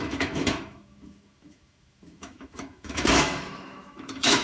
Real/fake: fake